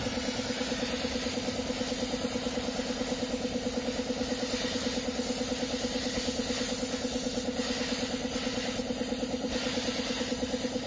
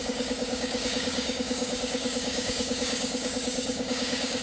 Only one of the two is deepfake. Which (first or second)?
second